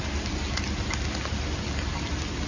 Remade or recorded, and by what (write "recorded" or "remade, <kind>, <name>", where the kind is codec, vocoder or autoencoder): recorded